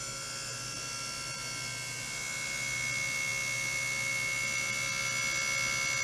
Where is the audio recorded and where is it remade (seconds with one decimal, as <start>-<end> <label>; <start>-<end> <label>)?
0.0-6.0 recorded